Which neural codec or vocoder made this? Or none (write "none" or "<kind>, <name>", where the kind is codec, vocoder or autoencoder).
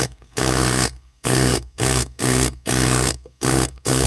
codec, SNAC